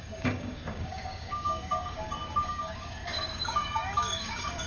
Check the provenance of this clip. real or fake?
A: fake